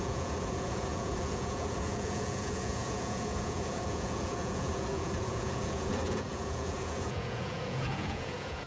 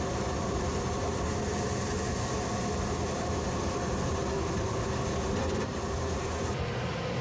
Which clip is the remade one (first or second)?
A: first